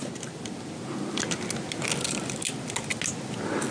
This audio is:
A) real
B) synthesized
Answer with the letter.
A